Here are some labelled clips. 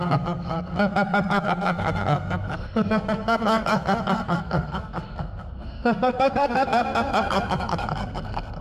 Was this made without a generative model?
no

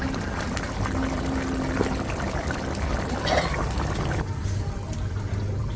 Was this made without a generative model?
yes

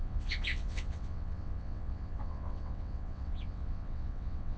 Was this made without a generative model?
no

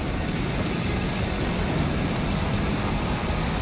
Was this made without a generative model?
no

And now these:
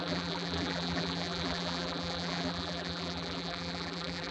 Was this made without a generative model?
no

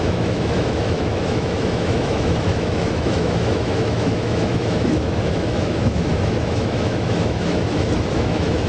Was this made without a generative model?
no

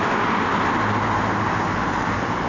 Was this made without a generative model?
yes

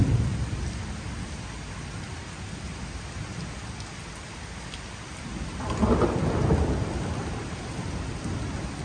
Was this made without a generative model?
yes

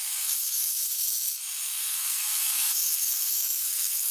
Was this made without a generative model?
no